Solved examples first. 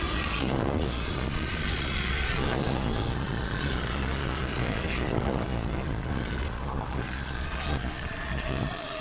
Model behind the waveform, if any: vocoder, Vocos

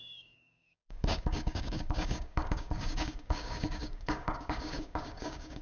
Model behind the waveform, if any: codec, DAC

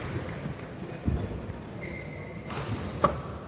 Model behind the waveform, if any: none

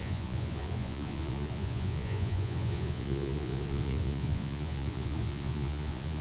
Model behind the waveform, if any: vocoder, Vocos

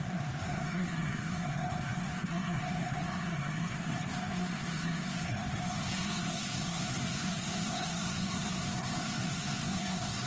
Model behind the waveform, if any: codec, SNAC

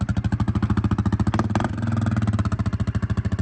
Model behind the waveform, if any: none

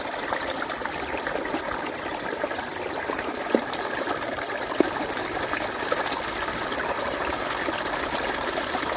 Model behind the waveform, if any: none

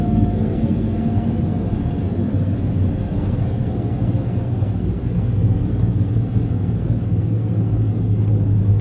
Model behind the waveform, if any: codec, SNAC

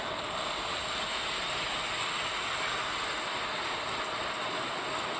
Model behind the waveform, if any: none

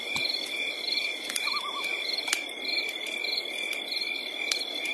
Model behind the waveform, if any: none